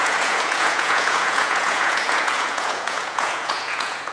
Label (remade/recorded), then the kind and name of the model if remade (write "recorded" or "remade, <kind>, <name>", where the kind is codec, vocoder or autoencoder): remade, vocoder, Vocos